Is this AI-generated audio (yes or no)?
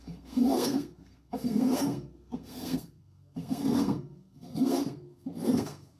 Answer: yes